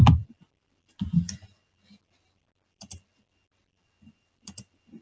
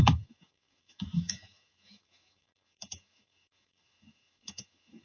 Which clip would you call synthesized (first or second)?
second